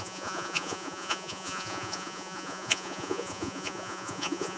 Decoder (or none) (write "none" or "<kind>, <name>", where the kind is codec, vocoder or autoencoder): vocoder, Vocos